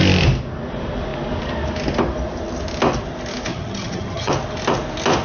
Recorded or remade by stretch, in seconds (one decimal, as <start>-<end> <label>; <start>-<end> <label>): 0.0-3.5 recorded; 3.5-4.3 remade; 4.3-5.2 recorded